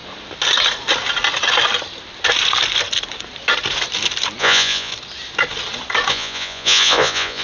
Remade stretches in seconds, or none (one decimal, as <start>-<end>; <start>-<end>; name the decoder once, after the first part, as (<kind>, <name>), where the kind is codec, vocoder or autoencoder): 4.4-4.9 (vocoder, Vocos); 6.1-7.4